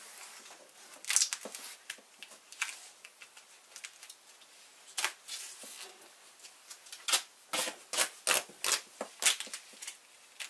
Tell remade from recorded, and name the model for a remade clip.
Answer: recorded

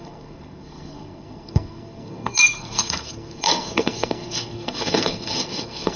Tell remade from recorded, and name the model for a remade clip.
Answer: remade, codec, SNAC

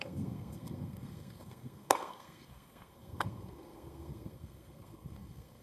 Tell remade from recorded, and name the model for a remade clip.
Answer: remade, codec, SNAC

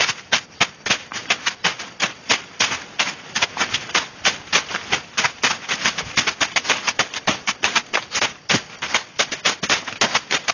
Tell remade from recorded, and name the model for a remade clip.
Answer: recorded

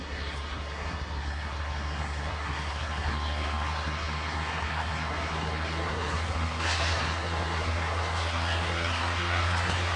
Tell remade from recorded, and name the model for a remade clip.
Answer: remade, codec, SNAC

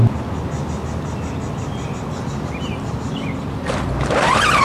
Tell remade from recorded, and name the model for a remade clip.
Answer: recorded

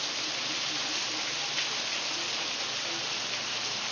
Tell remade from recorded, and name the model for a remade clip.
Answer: recorded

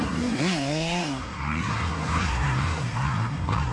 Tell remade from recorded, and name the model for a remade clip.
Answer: remade, codec, SNAC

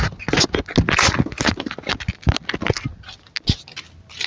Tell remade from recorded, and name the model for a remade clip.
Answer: recorded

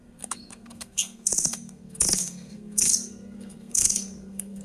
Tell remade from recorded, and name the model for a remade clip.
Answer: remade, codec, SNAC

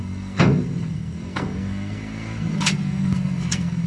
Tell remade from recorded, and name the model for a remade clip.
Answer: remade, codec, SNAC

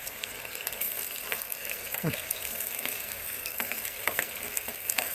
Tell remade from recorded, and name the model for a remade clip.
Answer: remade, codec, SNAC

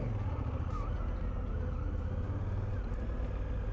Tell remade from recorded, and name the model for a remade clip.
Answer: recorded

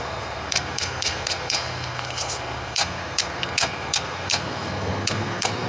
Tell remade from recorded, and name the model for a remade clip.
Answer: remade, codec, SNAC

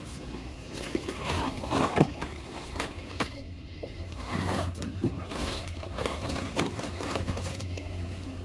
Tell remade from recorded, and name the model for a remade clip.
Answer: remade, codec, SNAC